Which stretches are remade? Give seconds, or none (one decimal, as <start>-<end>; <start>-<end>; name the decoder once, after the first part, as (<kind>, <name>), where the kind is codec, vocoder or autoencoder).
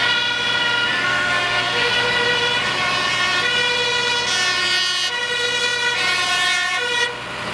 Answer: 0.9-2.0 (codec, SNAC)